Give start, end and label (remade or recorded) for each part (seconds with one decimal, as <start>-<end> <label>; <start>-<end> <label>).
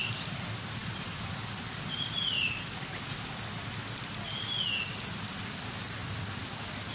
0.0-6.9 recorded